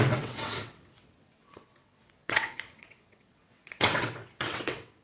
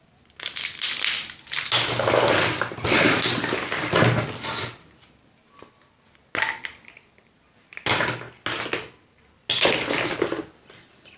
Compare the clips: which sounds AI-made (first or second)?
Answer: first